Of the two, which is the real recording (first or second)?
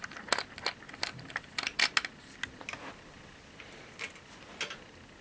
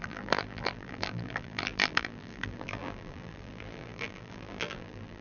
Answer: first